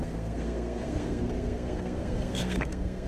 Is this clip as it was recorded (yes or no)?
no